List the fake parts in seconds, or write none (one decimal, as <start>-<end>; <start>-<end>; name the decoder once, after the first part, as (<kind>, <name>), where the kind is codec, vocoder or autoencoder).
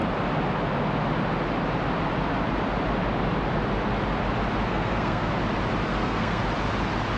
4.7-5.3 (codec, SNAC); 5.9-6.4